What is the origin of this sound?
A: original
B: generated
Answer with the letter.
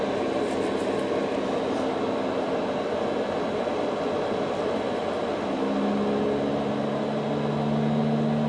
A